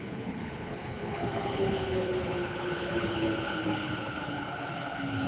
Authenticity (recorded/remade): remade